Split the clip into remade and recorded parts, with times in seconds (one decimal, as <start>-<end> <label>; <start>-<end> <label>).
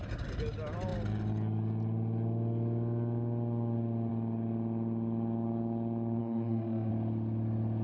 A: 0.0-6.2 recorded; 6.2-6.9 remade; 6.9-7.8 recorded